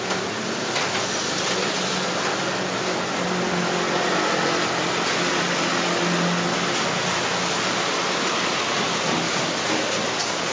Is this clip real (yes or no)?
yes